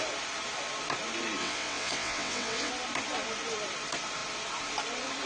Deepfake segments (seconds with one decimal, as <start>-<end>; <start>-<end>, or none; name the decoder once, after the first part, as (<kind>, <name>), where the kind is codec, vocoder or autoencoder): 1.4-2.7 (vocoder, WaveNeXt)